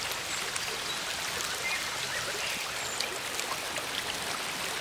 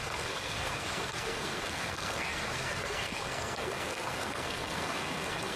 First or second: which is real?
first